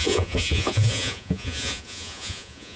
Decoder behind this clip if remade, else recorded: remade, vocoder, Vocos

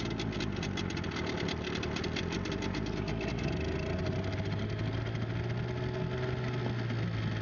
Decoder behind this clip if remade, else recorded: recorded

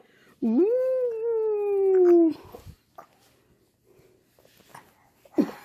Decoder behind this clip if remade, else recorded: recorded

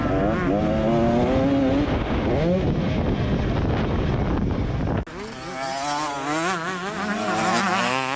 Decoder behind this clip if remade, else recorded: recorded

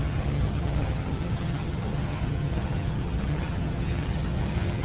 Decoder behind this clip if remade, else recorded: remade, vocoder, HiFi-GAN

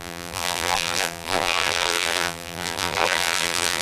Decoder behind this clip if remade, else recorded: remade, vocoder, BigVGAN v2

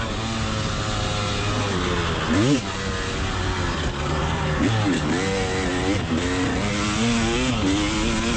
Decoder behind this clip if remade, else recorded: recorded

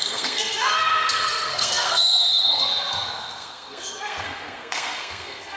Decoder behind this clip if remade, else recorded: remade, codec, SNAC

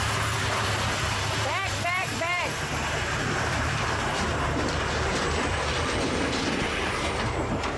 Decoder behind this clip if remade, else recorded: remade, vocoder, BigVGAN v2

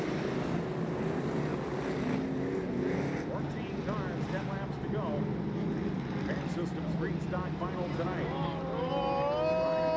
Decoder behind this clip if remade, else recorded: recorded